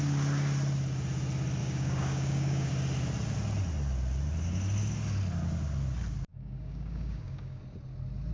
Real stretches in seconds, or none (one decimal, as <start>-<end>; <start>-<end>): 0.0-1.6; 2.7-6.3; 7.6-8.3